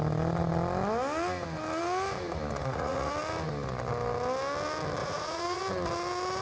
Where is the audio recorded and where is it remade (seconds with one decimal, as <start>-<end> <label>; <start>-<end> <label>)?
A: 0.0-2.6 recorded; 2.6-3.1 remade; 3.1-5.0 recorded; 5.0-5.6 remade; 5.6-6.4 recorded